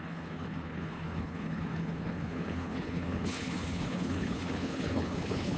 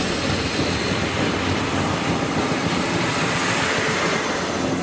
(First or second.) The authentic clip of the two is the second